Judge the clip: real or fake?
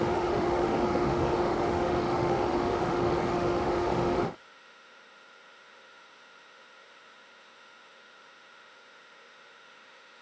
fake